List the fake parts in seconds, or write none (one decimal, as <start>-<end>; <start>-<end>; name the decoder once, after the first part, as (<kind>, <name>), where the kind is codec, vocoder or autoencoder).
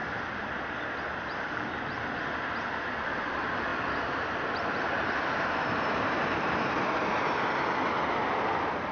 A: 0.0-0.5 (vocoder, BigVGAN v2); 3.7-6.4